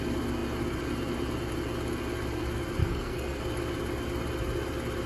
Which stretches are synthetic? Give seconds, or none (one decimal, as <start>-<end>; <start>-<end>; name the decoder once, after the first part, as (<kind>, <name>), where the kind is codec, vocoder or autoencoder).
2.8-3.4 (codec, SNAC)